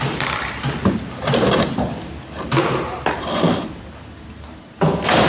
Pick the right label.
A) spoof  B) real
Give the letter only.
B